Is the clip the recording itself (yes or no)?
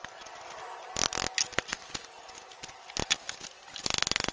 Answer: yes